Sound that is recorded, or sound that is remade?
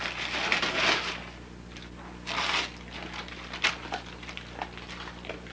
recorded